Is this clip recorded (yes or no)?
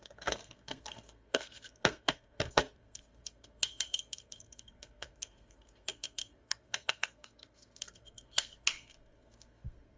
no